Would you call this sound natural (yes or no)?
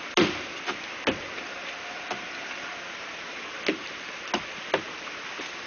yes